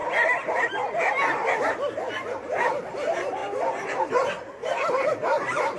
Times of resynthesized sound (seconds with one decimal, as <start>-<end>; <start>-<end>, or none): 0.0-1.7; 3.4-4.1; 4.6-5.8